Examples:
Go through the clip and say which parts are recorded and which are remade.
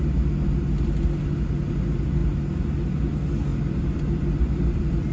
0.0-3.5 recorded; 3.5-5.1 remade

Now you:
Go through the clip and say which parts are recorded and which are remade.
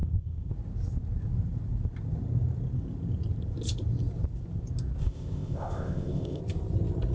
0.0-0.5 remade; 0.5-5.0 recorded; 5.0-6.4 remade; 6.4-7.1 recorded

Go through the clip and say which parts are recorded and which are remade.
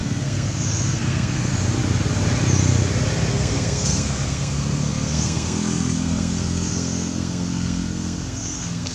0.0-1.5 remade; 1.5-3.3 recorded; 3.3-8.9 remade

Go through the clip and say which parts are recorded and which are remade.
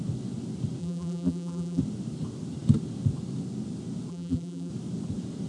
0.0-0.8 recorded; 0.8-1.8 remade; 1.8-4.1 recorded; 4.1-4.7 remade; 4.7-5.5 recorded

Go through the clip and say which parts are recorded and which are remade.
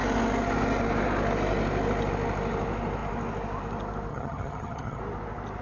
0.0-4.1 recorded; 4.1-5.0 remade; 5.0-5.6 recorded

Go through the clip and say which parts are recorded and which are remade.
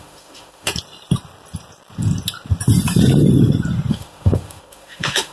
0.0-0.7 remade; 0.7-3.9 recorded; 3.9-5.3 remade